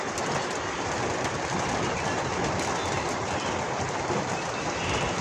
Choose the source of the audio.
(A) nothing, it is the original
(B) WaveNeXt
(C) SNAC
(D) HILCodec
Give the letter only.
A